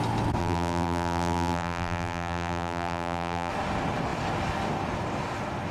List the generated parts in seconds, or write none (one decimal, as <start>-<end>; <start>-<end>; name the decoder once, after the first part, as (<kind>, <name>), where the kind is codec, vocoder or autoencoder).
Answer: 0.4-3.5 (vocoder, BigVGAN v2)